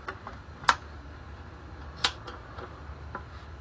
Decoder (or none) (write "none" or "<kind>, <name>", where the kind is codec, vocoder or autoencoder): none